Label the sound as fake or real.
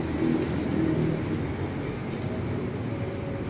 real